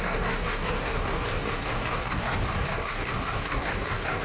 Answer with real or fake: fake